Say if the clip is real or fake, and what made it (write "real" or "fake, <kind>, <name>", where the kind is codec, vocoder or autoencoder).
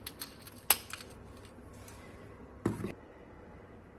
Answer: real